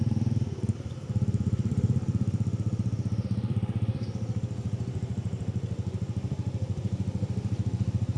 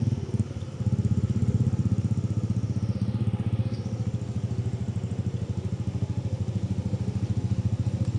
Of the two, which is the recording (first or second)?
second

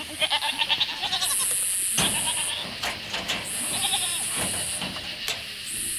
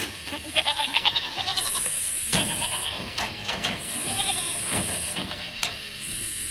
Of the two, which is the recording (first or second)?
first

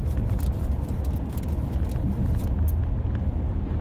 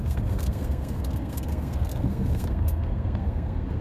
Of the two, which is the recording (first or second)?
first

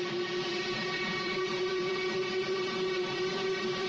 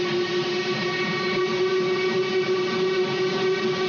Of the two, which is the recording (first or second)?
second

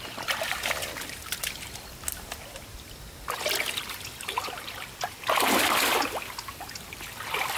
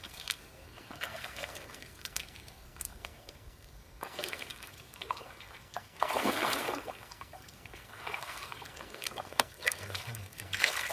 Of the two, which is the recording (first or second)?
first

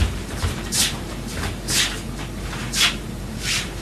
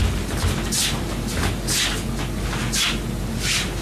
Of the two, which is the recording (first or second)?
second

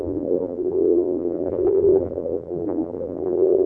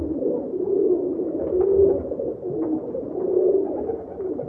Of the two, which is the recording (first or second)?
second